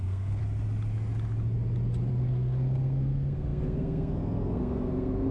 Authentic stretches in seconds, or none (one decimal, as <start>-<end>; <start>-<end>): 0.4-2.1